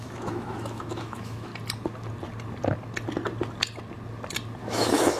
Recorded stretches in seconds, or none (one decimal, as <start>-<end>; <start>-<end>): 1.5-4.6